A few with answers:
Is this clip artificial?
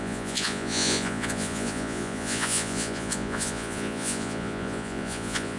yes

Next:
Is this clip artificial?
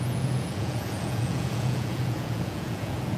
yes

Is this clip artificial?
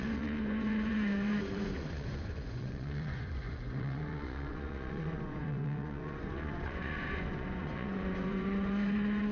yes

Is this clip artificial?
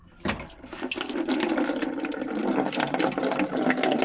no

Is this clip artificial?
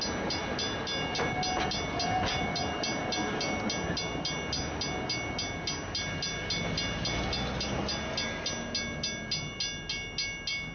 no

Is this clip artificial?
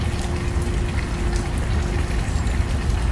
no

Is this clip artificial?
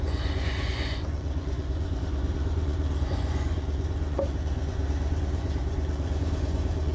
yes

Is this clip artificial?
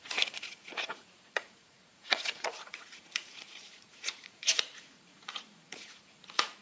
yes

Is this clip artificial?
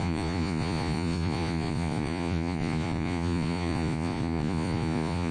yes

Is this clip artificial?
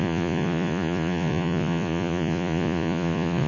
yes